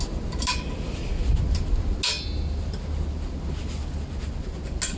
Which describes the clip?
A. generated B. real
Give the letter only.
B